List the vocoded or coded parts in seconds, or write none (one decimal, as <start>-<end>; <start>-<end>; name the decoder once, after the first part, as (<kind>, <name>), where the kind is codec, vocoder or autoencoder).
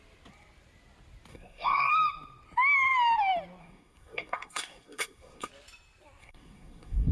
1.3-1.9 (codec, SNAC); 3.6-5.5; 6.2-7.1